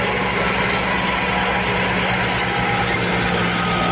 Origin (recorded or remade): recorded